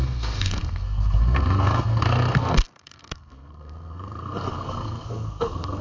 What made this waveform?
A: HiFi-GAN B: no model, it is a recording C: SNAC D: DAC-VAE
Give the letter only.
C